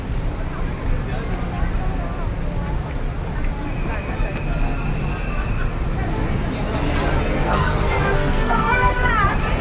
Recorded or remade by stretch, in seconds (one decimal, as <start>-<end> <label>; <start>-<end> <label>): 0.0-7.4 recorded; 7.4-9.1 remade; 9.1-9.6 recorded